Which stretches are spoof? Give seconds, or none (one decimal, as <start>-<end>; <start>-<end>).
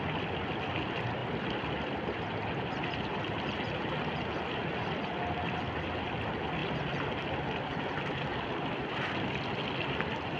1.2-2.2